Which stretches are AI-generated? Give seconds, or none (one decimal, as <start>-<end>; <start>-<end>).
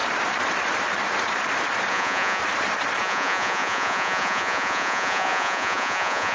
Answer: 1.9-2.4; 3.0-6.3